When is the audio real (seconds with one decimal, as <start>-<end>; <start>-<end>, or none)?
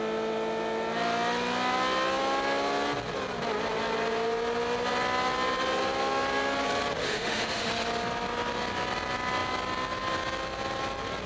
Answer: 0.0-7.0; 7.7-11.3